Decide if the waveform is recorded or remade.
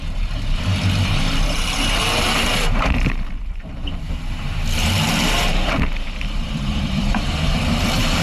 remade